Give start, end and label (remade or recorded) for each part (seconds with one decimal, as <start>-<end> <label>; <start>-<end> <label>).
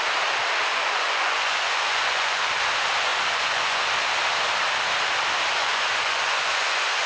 0.0-0.7 recorded; 0.7-2.5 remade; 2.5-3.1 recorded; 3.1-3.9 remade; 3.9-5.6 recorded; 5.6-7.1 remade